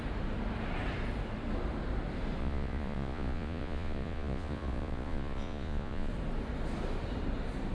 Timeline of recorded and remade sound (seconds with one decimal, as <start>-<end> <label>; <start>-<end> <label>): 0.0-2.4 recorded; 2.4-6.1 remade; 6.1-7.7 recorded